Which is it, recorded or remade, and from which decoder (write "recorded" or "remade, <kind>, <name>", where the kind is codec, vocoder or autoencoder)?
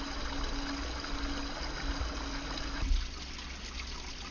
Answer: recorded